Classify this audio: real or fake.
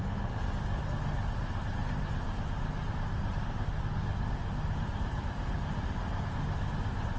real